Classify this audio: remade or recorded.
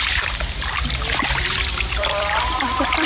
remade